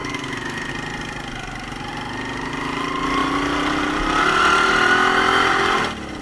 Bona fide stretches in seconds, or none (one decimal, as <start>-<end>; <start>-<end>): 0.7-6.2